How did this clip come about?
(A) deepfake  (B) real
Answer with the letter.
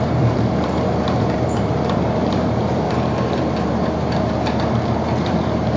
A